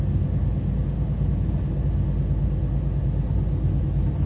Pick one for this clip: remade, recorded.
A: recorded